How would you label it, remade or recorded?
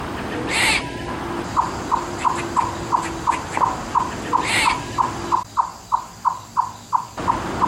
recorded